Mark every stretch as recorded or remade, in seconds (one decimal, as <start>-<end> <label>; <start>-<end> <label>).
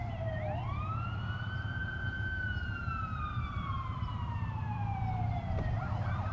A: 0.0-1.8 remade; 1.8-3.2 recorded; 3.2-6.3 remade